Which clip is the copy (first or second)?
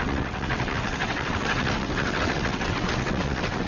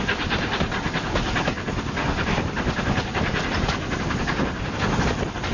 first